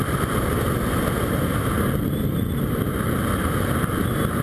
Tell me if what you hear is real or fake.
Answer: real